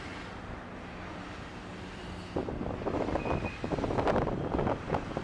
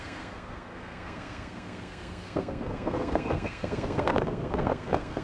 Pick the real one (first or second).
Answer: first